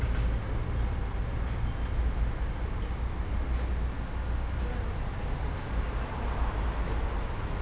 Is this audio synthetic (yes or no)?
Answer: no